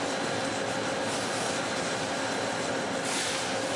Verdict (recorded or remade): recorded